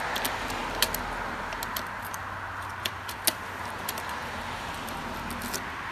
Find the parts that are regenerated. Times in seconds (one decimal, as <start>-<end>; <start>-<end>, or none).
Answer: none